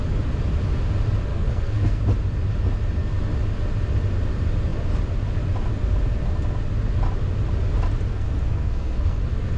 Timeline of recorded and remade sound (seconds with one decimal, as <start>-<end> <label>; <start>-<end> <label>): 0.0-1.3 recorded; 1.3-2.0 remade; 2.0-8.1 recorded; 8.1-9.2 remade; 9.2-9.6 recorded